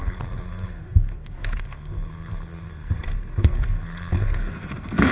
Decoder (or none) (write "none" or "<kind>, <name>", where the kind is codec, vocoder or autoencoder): codec, SNAC